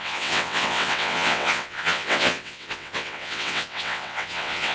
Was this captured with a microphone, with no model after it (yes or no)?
no